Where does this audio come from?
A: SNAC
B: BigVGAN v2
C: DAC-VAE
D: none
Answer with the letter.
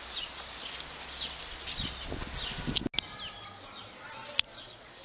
D